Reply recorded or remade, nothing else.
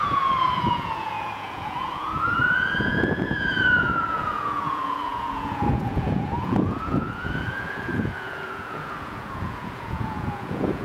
remade